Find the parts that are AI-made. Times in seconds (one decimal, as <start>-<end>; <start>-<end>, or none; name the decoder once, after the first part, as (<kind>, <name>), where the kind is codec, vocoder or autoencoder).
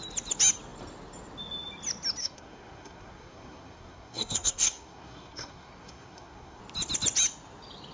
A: 2.2-6.6 (codec, SNAC)